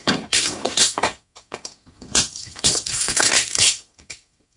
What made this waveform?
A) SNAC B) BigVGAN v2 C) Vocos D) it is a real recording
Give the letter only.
A